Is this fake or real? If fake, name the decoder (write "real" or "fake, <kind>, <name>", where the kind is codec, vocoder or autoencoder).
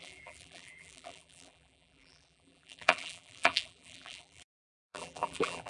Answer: fake, vocoder, BigVGAN v2